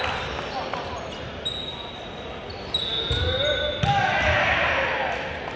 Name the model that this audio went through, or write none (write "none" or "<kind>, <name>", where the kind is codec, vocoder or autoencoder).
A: none